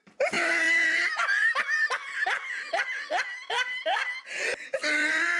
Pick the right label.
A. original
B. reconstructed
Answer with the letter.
A